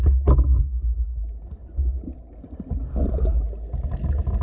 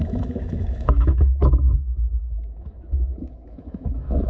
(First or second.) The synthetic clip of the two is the second